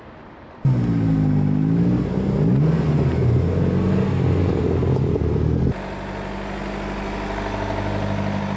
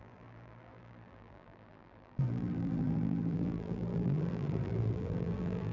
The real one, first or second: first